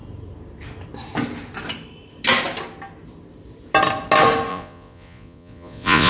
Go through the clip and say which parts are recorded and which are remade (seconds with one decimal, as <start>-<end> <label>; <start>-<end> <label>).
0.0-4.5 recorded; 4.5-6.1 remade